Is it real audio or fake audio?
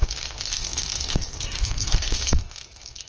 fake